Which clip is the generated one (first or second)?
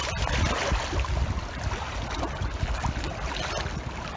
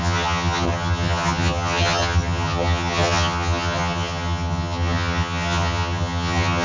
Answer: second